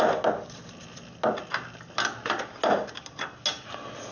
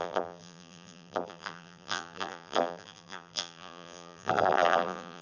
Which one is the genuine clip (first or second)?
first